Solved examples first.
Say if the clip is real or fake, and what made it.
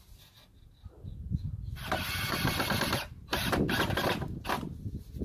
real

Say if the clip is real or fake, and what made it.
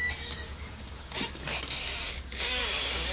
fake, codec, DAC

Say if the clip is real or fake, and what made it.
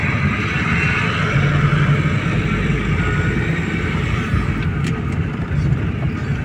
real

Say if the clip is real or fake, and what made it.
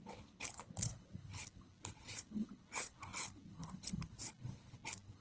fake, codec, HILCodec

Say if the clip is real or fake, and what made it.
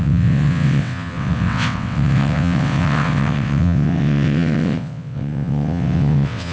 fake, vocoder, WaveNeXt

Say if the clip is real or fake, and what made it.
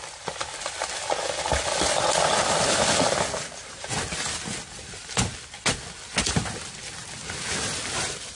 fake, vocoder, BigVGAN v2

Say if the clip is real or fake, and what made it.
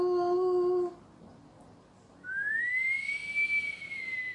real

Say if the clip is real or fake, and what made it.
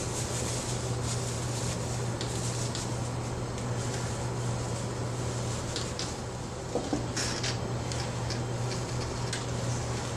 real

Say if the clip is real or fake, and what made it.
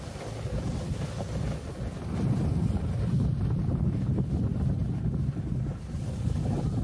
real